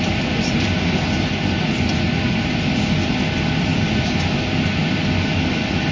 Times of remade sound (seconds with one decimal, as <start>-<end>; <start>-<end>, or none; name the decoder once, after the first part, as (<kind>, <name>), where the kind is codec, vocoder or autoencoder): none